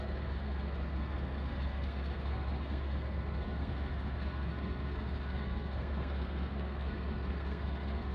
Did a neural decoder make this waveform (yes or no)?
yes